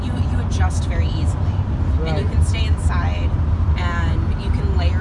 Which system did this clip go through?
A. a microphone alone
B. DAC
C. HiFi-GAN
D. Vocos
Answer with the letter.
A